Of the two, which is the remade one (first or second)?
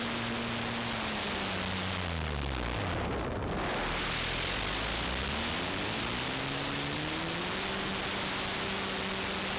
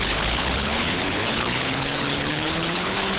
second